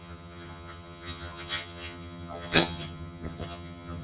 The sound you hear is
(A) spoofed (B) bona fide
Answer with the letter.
A